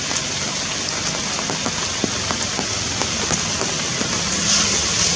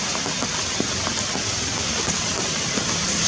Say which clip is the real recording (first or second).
first